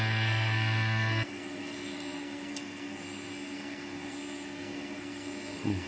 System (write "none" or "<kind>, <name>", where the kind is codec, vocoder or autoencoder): codec, SNAC